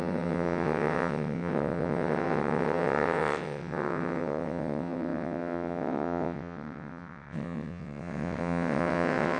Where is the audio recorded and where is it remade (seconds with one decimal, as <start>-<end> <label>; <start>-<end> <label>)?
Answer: 0.0-9.4 remade